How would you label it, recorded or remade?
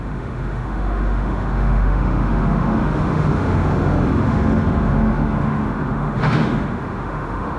remade